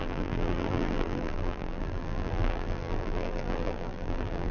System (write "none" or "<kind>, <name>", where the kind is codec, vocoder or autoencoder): vocoder, BigVGAN v2